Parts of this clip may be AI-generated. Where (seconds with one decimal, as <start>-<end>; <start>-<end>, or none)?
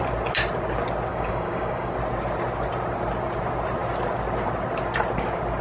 1.1-1.9